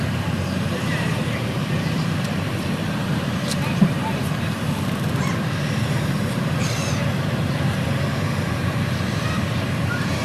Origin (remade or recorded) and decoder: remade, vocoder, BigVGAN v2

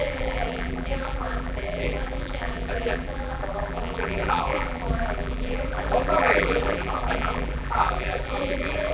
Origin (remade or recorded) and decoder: remade, vocoder, BigVGAN v2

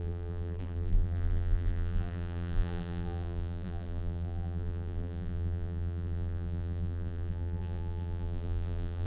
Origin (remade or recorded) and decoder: remade, vocoder, BigVGAN v2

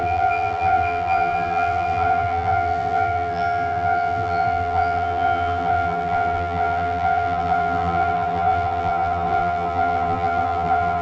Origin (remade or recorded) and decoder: remade, vocoder, BigVGAN v2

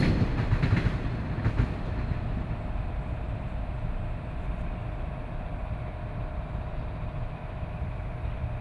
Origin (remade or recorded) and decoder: remade, vocoder, BigVGAN v2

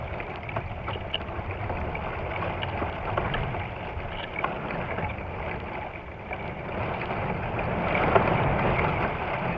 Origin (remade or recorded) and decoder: recorded